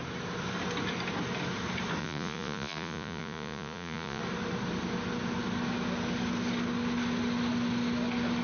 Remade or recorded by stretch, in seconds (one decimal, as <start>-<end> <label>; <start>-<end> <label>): 0.0-2.0 recorded; 2.0-4.2 remade; 4.2-8.4 recorded